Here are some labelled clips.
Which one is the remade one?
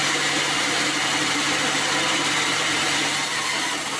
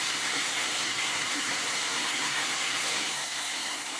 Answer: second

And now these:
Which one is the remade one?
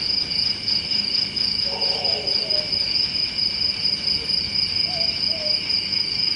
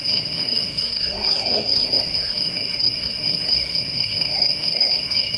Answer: second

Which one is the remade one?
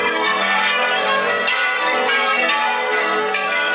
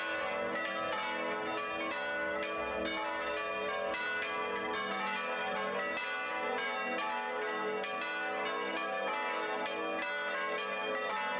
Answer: first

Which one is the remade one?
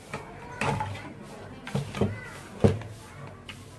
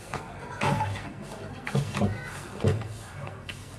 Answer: second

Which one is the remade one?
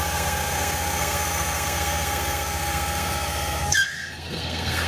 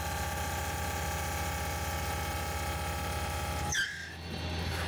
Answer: first